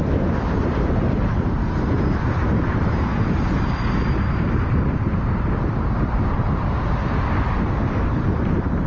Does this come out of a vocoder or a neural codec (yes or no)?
yes